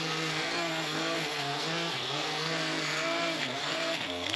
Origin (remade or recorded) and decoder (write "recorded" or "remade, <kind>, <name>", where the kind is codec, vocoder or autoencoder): remade, codec, SNAC